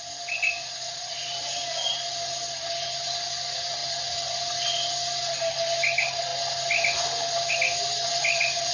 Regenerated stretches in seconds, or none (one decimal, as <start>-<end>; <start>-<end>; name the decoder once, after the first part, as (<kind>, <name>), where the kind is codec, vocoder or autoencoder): 0.6-1.2 (vocoder, Vocos)